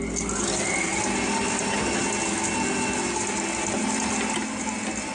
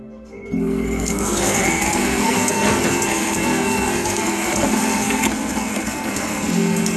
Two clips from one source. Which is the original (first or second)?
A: first